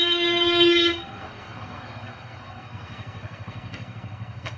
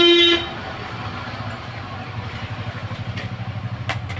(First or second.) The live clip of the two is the second